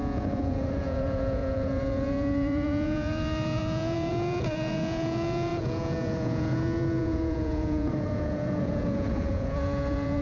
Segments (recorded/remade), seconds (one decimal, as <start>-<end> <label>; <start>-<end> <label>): 0.0-10.2 remade